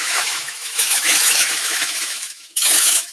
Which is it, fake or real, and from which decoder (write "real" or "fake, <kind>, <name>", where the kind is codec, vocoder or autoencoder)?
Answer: fake, autoencoder, DAC-VAE